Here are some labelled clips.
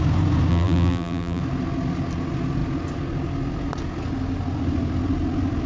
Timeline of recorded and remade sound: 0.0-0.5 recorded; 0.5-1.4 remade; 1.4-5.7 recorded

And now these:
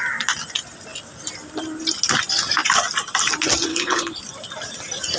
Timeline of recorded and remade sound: 0.0-3.7 recorded; 3.7-4.2 remade; 4.2-5.2 recorded

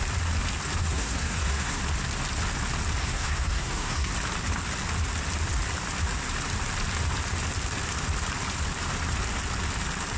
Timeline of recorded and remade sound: 0.0-0.8 recorded; 0.8-1.8 remade; 1.8-3.0 recorded; 3.0-4.1 remade; 4.1-10.2 recorded

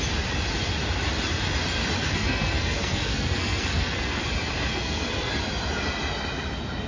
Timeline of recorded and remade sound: 0.0-2.1 recorded; 2.1-4.2 remade; 4.2-4.7 recorded; 4.7-5.3 remade; 5.3-6.9 recorded